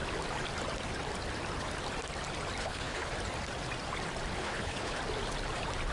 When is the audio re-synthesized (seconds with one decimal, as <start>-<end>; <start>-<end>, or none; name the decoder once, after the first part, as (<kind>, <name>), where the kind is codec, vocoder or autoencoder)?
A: 2.6-3.1 (codec, HILCodec); 4.4-5.0